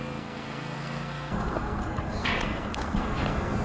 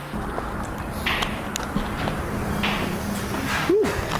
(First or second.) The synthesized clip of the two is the first